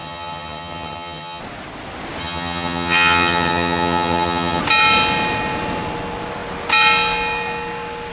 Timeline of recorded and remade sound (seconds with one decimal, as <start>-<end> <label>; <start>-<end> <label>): 0.0-1.4 remade; 1.4-2.2 recorded; 2.2-4.6 remade; 4.6-8.1 recorded